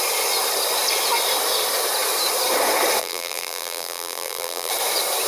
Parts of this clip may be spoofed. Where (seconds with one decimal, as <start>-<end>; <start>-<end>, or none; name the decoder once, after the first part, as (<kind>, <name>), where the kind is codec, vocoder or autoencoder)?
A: 3.0-4.7 (vocoder, BigVGAN v2)